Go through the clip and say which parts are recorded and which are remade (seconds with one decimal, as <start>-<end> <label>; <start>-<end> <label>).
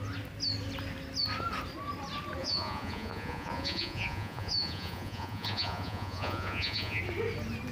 0.0-2.4 recorded; 2.4-7.0 remade; 7.0-7.7 recorded